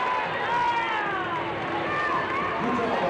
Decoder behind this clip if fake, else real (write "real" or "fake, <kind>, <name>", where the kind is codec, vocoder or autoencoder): real